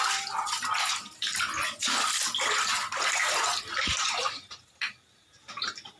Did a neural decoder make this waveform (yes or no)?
yes